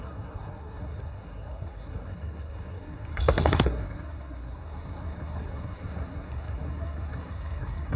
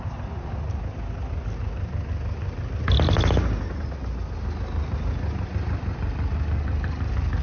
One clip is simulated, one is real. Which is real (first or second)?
second